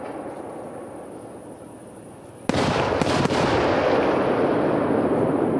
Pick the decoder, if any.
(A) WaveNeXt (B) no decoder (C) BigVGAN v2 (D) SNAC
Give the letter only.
B